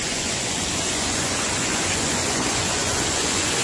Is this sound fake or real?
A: fake